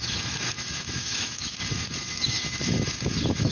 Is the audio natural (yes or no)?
no